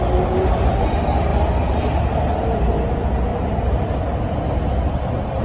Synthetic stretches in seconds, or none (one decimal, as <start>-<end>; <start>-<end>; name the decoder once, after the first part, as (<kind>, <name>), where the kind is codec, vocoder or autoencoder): none